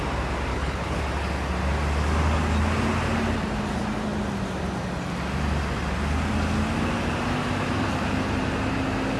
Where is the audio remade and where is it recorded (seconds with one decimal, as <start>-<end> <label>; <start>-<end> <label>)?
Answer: 0.0-0.5 recorded; 0.5-1.0 remade; 1.0-9.2 recorded